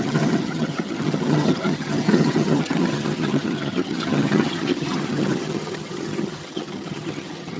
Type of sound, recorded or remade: remade